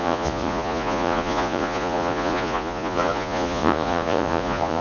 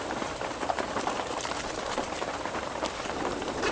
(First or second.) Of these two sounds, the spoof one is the first